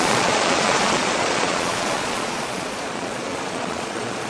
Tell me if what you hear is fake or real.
fake